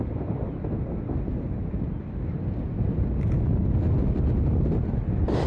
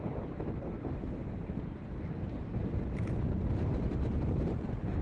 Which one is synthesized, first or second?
second